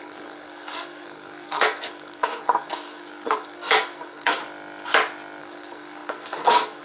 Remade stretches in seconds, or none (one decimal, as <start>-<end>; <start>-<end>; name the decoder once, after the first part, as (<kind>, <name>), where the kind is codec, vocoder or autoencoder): 0.0-4.4 (codec, SNAC); 5.4-6.8